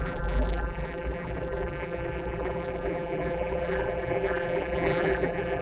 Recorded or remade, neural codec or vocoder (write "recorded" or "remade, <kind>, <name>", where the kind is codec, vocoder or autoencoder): remade, vocoder, BigVGAN v2